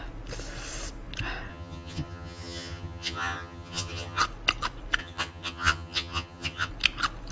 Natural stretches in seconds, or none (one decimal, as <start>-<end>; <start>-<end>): 0.0-1.5; 4.2-5.0; 6.7-7.3